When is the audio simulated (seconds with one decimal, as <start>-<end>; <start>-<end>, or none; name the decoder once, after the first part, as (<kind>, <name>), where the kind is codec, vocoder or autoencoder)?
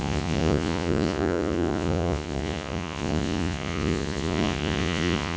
0.0-5.4 (vocoder, Vocos)